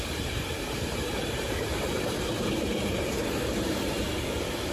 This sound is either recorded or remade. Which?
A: remade